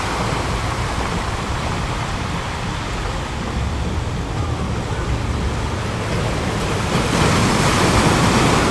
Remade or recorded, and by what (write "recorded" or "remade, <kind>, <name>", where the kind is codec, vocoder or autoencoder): recorded